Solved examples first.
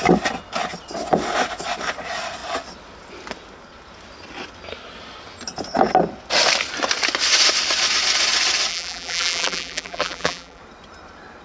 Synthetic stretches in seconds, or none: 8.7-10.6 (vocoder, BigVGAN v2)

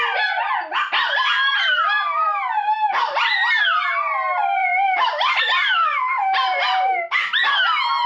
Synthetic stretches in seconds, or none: none

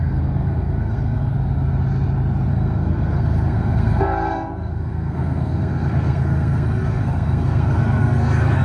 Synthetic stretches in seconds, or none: 0.0-1.3 (codec, SNAC); 2.5-8.6